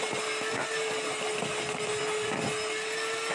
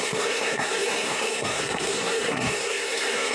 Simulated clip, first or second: second